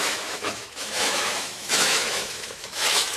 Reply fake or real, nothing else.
fake